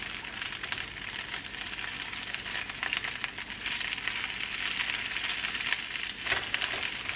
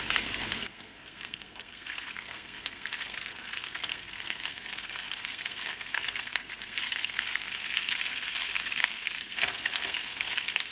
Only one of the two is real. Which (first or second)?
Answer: first